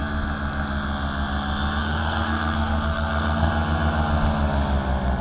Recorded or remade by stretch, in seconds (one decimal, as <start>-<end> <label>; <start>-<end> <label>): 0.0-1.8 recorded; 1.8-3.5 remade; 3.5-5.2 recorded